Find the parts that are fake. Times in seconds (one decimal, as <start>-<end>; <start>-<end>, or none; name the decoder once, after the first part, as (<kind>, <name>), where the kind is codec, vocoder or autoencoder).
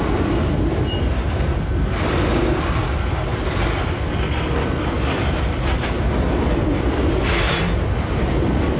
0.0-8.8 (vocoder, BigVGAN v2)